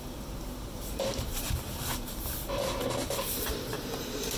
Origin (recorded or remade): remade